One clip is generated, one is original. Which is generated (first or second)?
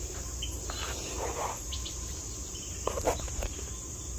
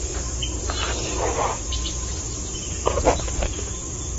first